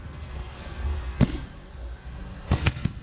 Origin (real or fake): fake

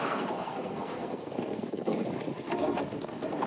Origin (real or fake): fake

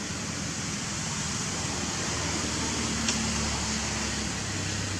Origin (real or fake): real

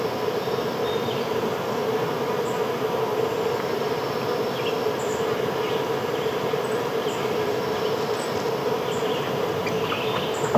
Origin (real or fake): real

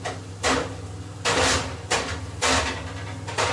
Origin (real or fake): real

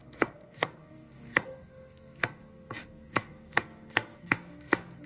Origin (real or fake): fake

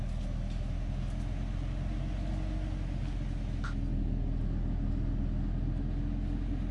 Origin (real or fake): real